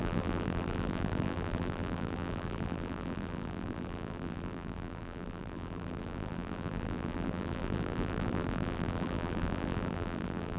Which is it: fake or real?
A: fake